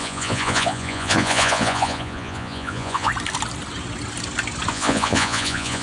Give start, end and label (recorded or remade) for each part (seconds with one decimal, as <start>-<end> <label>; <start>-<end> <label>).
0.0-3.1 remade; 3.1-4.7 recorded; 4.7-5.8 remade